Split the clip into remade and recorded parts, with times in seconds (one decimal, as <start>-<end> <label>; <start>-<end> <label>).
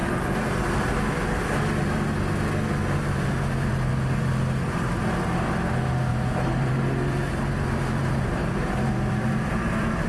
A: 0.0-2.8 recorded; 2.8-3.9 remade; 3.9-6.1 recorded; 6.1-10.1 remade